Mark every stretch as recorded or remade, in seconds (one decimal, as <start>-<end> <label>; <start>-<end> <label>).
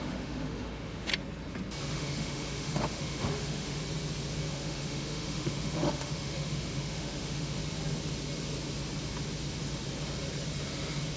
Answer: 0.0-1.1 remade; 1.1-1.9 recorded; 1.9-3.8 remade; 3.8-4.5 recorded; 4.5-7.6 remade; 7.6-11.2 recorded